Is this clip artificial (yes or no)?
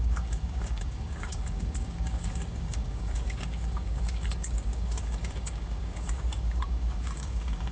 yes